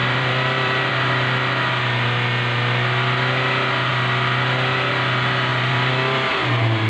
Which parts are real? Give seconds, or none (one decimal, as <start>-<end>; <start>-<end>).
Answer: 0.9-5.5; 6.3-6.9